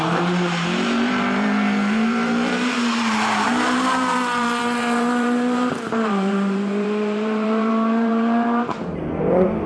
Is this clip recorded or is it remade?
remade